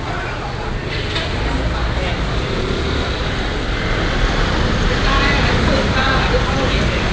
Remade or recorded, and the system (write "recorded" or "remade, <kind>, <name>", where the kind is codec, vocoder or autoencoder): recorded